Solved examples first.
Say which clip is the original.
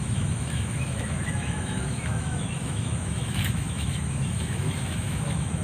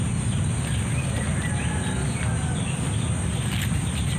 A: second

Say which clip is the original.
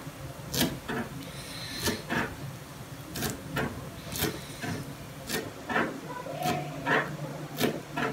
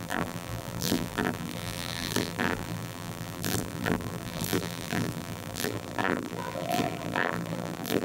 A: first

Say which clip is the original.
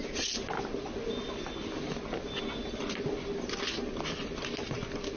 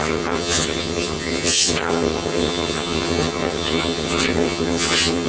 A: first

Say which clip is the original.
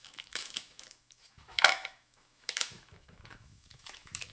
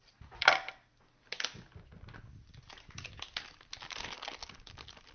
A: second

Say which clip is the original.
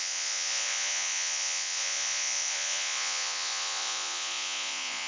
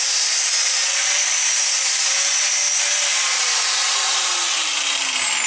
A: second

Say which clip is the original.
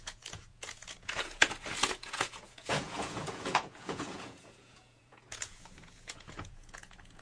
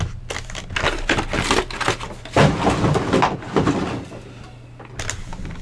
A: second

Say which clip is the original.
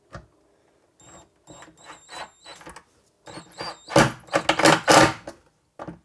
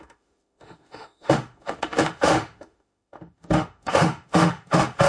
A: first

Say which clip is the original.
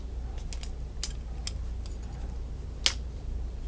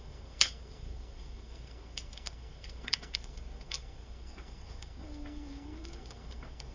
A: first